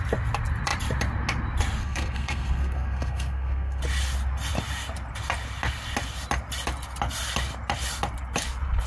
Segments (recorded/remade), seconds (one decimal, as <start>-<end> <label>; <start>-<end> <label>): 0.0-1.8 recorded; 1.8-3.8 remade; 3.8-8.9 recorded